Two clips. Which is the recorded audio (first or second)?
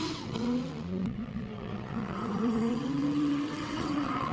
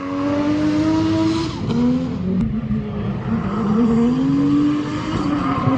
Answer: second